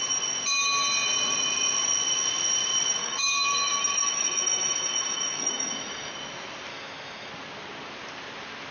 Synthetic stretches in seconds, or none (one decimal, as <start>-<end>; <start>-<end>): 3.0-6.1; 6.7-7.3